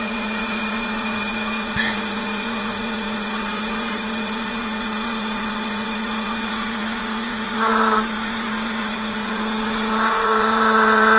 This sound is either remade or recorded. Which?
remade